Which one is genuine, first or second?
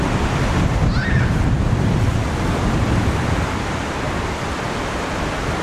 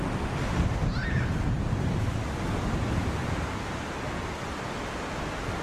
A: second